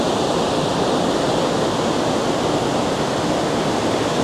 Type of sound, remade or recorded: recorded